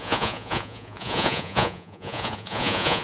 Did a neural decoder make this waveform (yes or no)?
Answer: yes